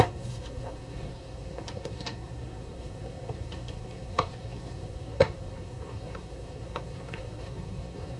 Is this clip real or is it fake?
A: fake